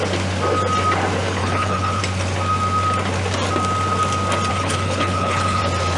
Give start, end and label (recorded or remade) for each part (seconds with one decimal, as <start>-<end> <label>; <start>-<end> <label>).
0.0-1.4 recorded; 1.4-2.0 remade; 2.0-4.5 recorded; 4.5-5.6 remade; 5.6-6.0 recorded